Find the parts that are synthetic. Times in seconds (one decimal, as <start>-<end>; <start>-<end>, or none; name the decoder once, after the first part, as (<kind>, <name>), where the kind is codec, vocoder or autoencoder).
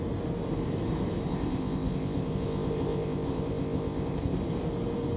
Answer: 1.3-4.4 (codec, ZipCodec)